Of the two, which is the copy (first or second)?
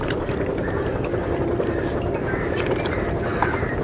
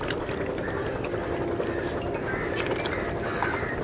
first